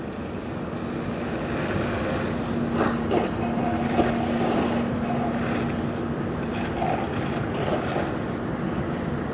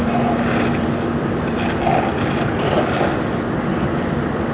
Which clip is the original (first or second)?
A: second